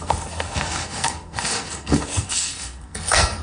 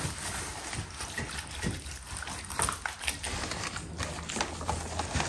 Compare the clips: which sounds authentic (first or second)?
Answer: second